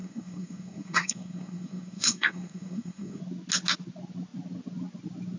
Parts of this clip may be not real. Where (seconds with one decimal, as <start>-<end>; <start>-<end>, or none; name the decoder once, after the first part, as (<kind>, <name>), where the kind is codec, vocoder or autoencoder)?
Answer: 0.0-3.2 (codec, SNAC)